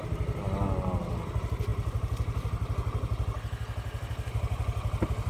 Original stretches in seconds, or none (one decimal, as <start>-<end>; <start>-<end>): 0.0-5.3